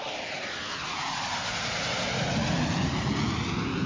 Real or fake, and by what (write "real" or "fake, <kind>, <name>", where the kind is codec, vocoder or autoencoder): real